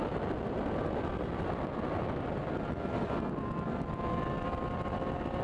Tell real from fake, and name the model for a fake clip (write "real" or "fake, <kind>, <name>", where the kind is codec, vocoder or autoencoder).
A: real